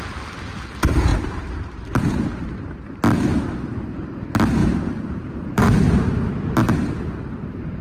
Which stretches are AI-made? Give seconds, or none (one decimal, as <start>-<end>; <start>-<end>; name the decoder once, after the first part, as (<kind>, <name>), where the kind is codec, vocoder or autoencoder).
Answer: 1.1-2.0 (vocoder, BigVGAN v2); 4.6-6.0

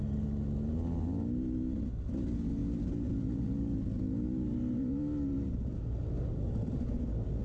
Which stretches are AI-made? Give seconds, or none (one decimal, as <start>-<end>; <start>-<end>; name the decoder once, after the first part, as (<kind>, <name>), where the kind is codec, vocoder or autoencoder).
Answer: none

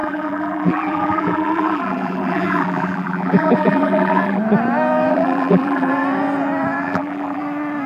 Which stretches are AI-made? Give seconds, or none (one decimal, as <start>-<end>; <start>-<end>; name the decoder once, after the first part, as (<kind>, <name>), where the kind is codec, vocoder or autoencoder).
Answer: 0.0-4.4 (vocoder, BigVGAN v2); 5.1-5.9; 6.8-7.4

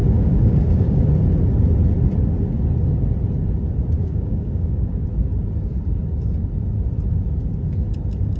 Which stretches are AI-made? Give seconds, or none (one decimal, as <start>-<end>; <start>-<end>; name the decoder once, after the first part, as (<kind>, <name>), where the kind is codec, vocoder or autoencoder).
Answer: 0.0-1.0 (codec, DAC); 4.0-5.0

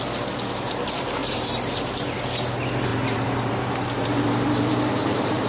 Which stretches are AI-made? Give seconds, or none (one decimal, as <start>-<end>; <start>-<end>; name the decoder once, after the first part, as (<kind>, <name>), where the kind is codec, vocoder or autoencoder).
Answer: 1.2-1.9 (vocoder, BigVGAN v2); 2.9-5.5

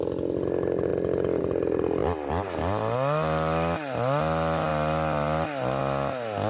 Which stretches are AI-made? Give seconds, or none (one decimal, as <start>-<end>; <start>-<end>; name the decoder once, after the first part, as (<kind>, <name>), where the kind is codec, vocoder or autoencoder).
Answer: none

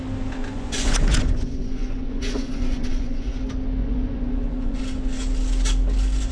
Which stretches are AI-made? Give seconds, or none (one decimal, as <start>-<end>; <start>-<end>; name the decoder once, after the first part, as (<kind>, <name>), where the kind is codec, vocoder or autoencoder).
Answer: 0.4-3.4 (vocoder, Vocos); 3.8-4.8

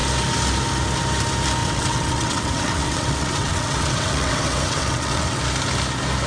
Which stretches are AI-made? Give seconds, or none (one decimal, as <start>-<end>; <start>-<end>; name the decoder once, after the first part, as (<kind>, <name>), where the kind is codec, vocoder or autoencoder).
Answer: 1.6-5.4 (vocoder, WaveNeXt)